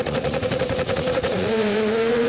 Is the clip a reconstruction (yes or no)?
yes